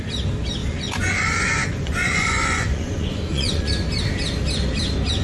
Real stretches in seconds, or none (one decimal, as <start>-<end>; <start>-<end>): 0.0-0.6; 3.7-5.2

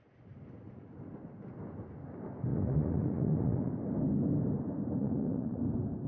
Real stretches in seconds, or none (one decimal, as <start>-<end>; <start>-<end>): 0.0-2.5; 3.7-5.0; 5.6-6.1

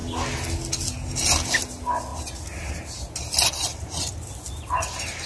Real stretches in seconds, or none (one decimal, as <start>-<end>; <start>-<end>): 0.0-5.3

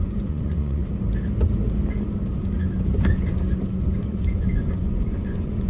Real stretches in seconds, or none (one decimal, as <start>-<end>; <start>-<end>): 0.8-4.0

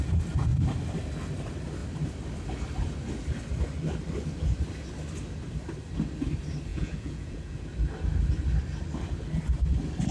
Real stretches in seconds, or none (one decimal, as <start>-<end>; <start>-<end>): 0.0-6.7; 7.7-10.1

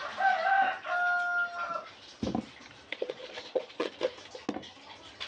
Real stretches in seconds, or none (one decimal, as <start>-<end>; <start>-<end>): 0.0-2.9; 3.9-5.3